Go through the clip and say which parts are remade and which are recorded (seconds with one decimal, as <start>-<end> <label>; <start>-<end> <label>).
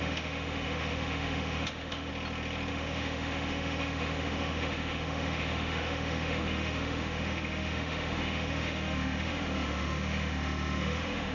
0.0-2.1 remade; 2.1-2.7 recorded; 2.7-11.3 remade